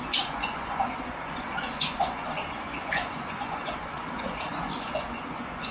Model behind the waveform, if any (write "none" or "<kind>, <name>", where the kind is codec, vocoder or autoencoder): vocoder, Vocos